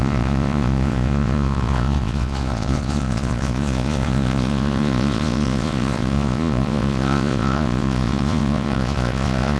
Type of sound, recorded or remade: remade